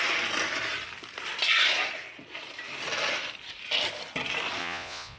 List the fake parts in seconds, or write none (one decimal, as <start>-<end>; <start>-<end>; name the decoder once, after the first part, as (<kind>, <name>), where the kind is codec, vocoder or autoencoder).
4.6-5.2 (vocoder, Vocos)